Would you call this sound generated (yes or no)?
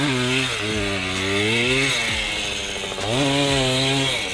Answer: no